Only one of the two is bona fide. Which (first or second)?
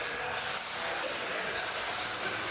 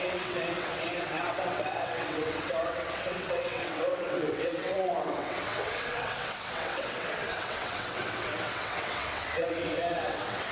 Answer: first